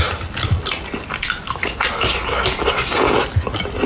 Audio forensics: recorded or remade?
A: recorded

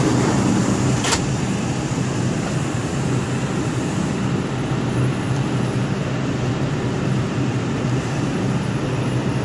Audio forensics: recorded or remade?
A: remade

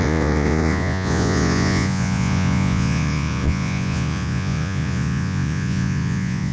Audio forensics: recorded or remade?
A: remade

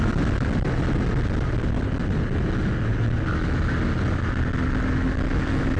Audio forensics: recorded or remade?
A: recorded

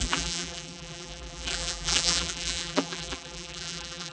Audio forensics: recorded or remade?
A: remade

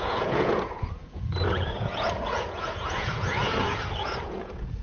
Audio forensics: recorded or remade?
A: remade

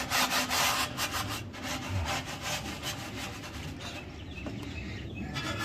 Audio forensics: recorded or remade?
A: recorded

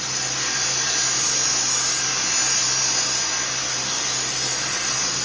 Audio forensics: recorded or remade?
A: recorded